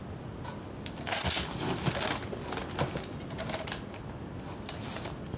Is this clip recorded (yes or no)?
yes